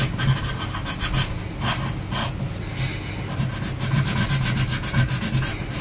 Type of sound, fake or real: real